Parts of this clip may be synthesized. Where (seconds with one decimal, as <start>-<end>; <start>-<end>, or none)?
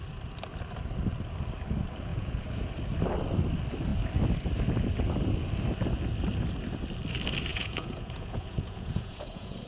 2.1-2.6; 7.5-9.7